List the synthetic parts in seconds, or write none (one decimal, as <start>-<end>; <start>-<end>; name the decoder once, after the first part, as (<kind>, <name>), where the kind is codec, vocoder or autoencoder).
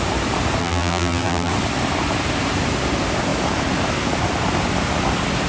0.6-1.5 (vocoder, BigVGAN v2)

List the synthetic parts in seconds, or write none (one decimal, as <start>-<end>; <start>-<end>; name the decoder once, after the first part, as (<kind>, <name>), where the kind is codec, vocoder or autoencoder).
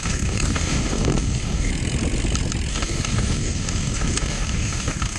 0.0-1.7 (codec, DAC); 2.7-5.2